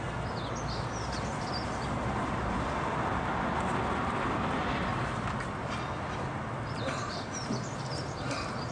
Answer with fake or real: real